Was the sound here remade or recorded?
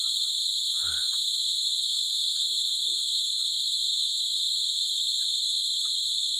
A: remade